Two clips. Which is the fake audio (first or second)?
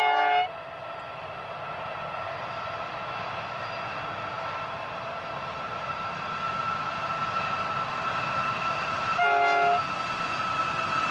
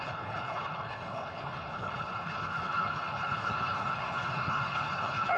second